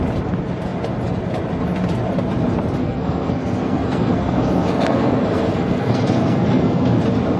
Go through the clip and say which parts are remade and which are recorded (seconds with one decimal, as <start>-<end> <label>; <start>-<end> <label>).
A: 0.0-2.8 recorded; 2.8-7.0 remade; 7.0-7.4 recorded